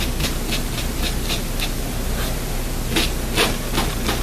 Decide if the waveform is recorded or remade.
recorded